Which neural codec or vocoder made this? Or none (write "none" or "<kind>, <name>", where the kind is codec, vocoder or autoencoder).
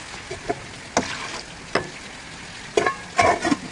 none